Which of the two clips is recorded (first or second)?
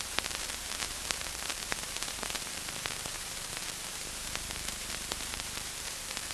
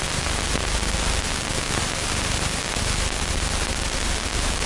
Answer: second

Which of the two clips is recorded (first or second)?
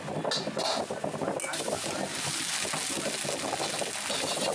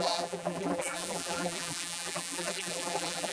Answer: first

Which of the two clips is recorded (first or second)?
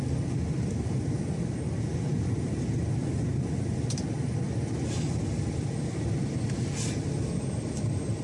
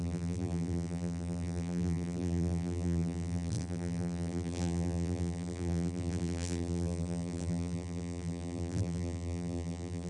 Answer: first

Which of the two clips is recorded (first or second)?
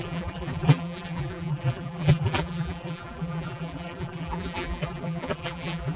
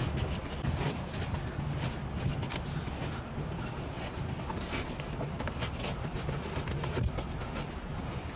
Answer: second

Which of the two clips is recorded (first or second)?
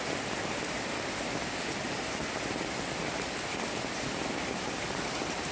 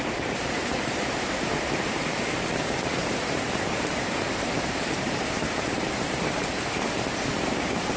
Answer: first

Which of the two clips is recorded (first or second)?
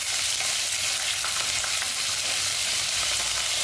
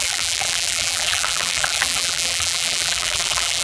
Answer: first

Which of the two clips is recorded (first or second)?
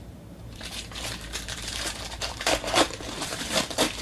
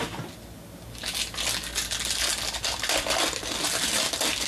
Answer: second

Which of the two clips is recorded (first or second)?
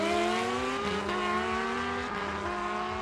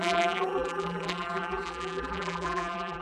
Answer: first